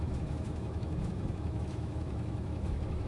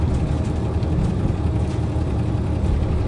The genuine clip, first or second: second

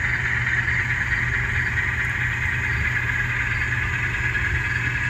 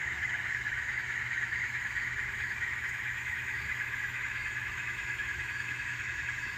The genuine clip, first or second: first